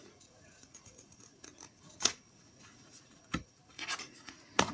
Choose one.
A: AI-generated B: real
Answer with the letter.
A